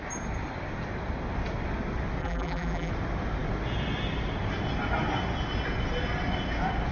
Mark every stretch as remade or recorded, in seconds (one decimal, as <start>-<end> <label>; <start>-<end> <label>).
0.0-2.2 recorded; 2.2-2.9 remade; 2.9-6.9 recorded